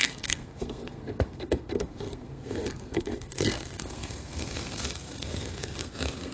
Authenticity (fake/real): fake